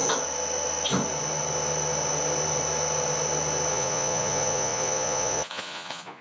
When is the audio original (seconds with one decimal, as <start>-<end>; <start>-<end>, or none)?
0.0-3.7